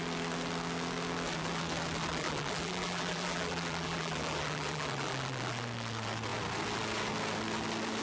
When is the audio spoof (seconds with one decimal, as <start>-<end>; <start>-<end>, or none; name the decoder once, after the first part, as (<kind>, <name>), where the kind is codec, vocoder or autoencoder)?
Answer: 2.1-5.6 (vocoder, BigVGAN v2)